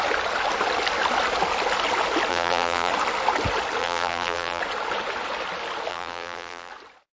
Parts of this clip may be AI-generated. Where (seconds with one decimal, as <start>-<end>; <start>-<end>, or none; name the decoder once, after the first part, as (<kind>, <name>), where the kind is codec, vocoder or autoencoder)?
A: 2.3-2.9 (vocoder, BigVGAN v2); 3.8-4.6; 5.9-6.7